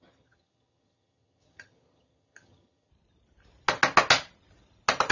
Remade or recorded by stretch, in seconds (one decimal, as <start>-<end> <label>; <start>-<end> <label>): 0.0-2.9 remade; 2.9-5.1 recorded